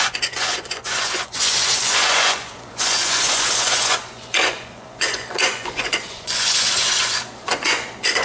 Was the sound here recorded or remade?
remade